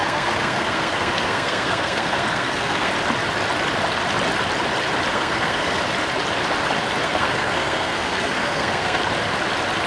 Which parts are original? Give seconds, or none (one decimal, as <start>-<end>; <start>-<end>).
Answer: 2.9-5.1; 5.8-7.0; 9.0-9.9